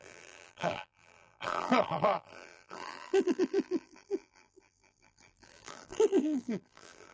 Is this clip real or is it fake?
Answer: fake